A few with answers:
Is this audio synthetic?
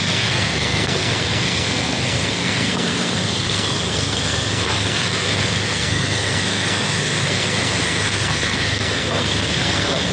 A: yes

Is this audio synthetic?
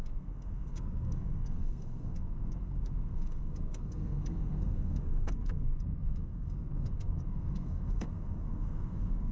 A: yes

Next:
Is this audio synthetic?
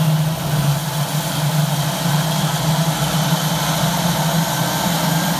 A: no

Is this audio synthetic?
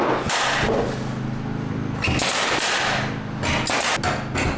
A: no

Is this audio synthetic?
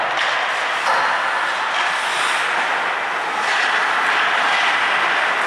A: no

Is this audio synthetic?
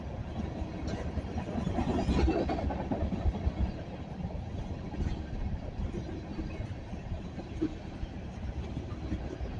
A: no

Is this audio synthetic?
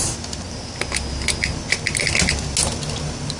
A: no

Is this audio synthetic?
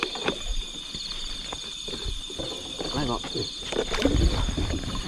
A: no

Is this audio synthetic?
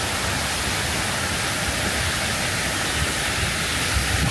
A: no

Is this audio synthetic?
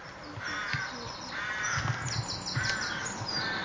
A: no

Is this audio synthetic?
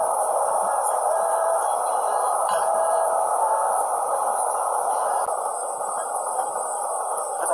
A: no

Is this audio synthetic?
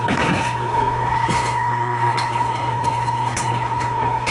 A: yes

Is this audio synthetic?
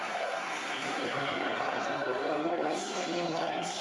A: yes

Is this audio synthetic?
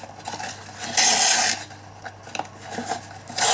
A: no